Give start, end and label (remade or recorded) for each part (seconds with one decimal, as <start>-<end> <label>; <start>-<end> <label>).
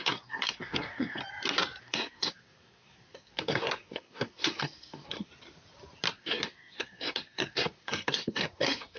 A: 0.0-1.2 remade; 1.2-1.8 recorded; 1.8-5.3 remade; 5.3-6.1 recorded; 6.1-9.0 remade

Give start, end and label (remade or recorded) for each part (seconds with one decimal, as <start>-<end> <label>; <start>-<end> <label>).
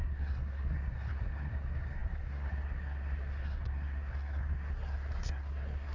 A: 0.0-5.9 remade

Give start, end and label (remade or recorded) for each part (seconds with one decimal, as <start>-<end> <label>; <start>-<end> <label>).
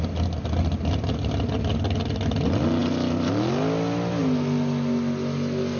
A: 0.0-5.8 recorded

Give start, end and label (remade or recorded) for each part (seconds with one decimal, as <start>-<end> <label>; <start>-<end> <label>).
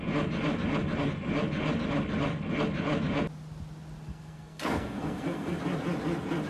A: 0.0-4.1 recorded; 4.1-5.6 remade; 5.6-6.5 recorded